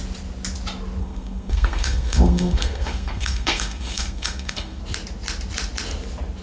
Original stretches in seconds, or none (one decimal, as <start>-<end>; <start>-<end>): 0.0-1.0; 4.8-6.4